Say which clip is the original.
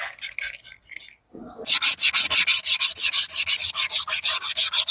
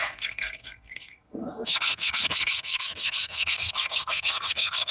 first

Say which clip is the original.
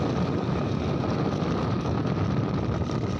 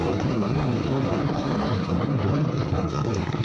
first